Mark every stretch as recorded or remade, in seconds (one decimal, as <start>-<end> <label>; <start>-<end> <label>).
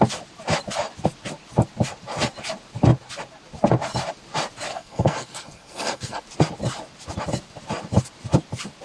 0.0-4.7 recorded; 4.7-6.2 remade; 6.2-8.8 recorded